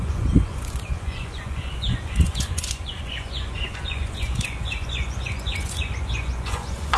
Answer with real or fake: fake